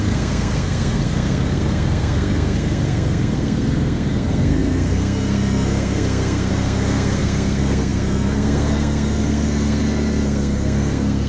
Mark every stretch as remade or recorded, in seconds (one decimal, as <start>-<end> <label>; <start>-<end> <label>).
0.0-11.3 remade